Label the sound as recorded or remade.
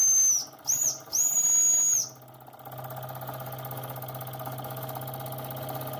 recorded